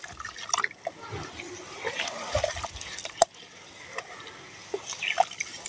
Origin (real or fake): real